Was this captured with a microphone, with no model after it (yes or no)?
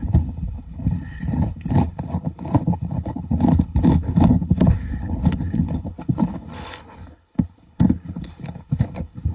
no